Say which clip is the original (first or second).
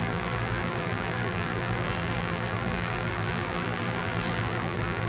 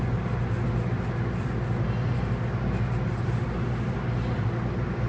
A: second